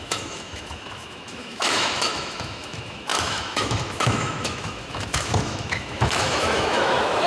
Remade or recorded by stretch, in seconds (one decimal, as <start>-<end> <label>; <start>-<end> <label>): 0.0-7.3 remade